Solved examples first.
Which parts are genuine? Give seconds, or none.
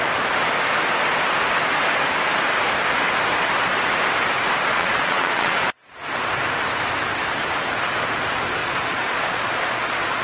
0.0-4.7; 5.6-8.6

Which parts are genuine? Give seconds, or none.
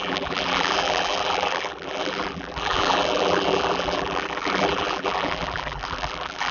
none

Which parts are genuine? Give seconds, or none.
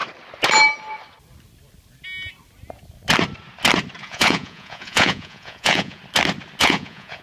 0.0-4.0; 6.0-6.6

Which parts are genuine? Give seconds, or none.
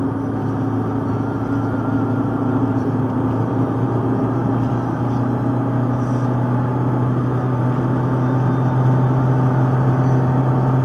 0.0-10.8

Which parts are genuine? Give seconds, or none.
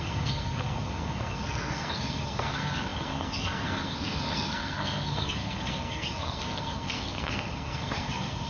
none